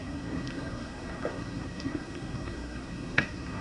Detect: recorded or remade remade